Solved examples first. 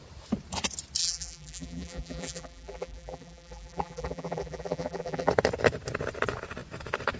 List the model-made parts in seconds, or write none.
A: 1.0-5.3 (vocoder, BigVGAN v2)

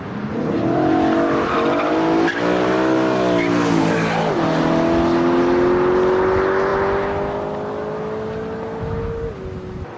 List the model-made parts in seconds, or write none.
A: none